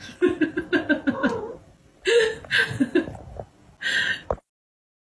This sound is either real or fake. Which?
real